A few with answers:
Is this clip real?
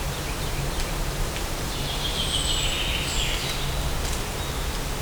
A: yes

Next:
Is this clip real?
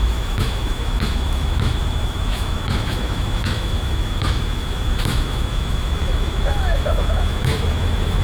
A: no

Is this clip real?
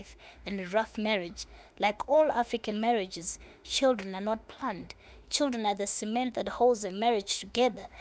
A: no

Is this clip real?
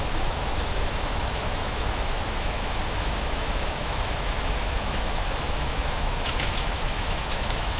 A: no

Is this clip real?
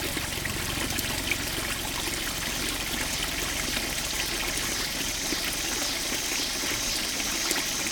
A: yes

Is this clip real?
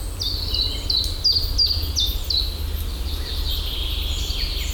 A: yes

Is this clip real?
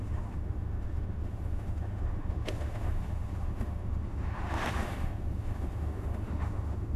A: no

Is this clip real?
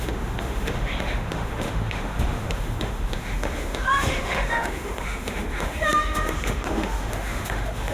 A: no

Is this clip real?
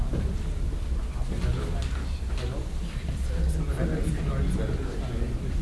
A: yes